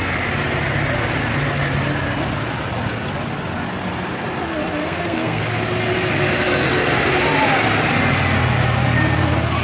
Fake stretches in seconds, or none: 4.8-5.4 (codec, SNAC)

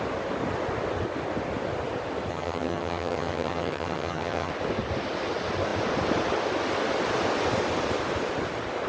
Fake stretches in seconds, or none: 2.3-4.5 (vocoder, HiFi-GAN)

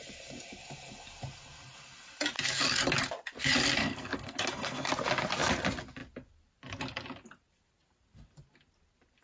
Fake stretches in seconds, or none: 3.8-4.9 (codec, SNAC)

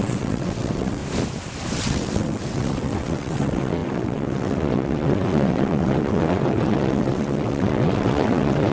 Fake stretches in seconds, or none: 0.0-1.0 (vocoder, WaveNeXt); 1.7-8.7

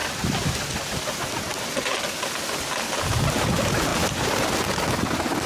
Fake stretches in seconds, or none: none

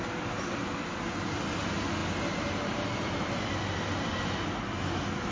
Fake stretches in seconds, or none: none

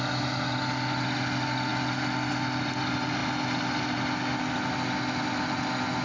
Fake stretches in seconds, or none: none

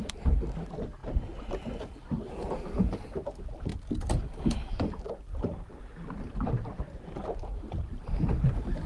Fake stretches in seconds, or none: none